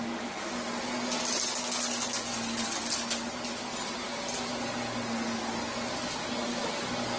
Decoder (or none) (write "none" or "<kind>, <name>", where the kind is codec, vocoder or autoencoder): none